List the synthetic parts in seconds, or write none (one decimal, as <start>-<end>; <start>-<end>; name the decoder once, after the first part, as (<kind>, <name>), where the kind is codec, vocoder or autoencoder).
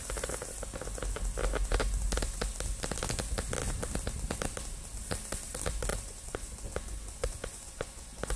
5.9-8.4 (vocoder, Vocos)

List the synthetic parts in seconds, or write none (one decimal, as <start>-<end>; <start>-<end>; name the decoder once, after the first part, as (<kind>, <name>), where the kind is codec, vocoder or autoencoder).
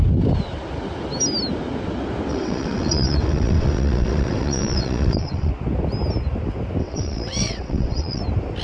2.3-5.5 (vocoder, WaveNeXt); 6.8-8.2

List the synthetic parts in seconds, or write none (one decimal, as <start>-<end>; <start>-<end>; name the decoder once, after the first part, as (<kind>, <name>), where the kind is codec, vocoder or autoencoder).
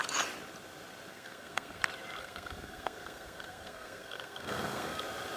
1.1-1.8 (codec, SNAC); 2.2-5.0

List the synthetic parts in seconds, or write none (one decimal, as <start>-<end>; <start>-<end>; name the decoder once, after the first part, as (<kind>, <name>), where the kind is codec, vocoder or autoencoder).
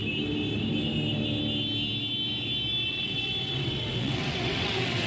2.9-5.1 (vocoder, WaveNeXt)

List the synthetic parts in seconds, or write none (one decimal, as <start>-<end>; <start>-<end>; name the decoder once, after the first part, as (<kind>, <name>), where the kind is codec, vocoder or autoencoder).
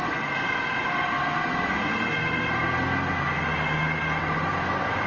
none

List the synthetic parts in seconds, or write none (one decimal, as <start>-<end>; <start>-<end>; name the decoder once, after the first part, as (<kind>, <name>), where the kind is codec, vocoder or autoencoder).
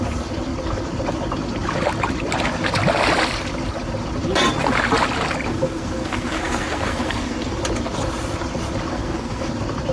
5.5-7.6 (codec, SNAC); 8.9-9.5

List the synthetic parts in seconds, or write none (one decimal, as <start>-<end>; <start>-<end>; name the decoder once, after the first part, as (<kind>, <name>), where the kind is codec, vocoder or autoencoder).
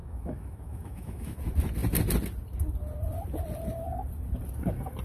0.0-1.4 (autoencoder, DAC-VAE)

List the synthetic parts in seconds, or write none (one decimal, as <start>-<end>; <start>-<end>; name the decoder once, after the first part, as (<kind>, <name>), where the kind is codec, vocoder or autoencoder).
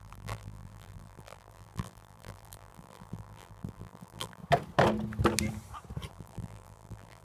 0.0-4.4 (vocoder, BigVGAN v2); 6.1-7.2